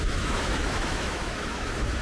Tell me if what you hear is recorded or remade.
remade